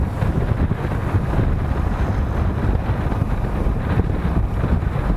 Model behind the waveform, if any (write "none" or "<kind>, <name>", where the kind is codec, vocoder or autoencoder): none